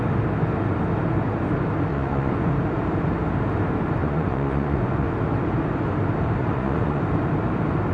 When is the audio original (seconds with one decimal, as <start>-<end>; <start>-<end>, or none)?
0.0-1.9; 2.5-4.0; 5.1-6.4; 7.0-7.9